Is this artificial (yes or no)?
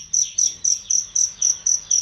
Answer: no